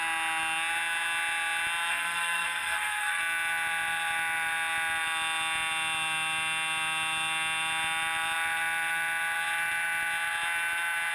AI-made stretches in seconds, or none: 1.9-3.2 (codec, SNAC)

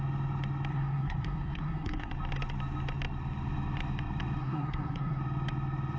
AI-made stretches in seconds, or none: 0.7-2.1 (codec, SNAC); 4.4-5.2

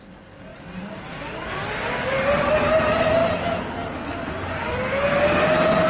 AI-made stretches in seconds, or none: none

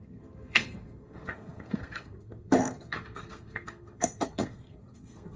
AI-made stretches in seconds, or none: 0.0-5.4 (codec, SNAC)